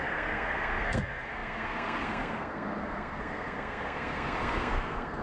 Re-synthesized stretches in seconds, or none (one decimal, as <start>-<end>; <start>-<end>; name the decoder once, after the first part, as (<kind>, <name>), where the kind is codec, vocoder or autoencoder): 0.0-5.2 (codec, SNAC)